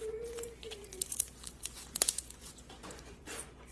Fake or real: fake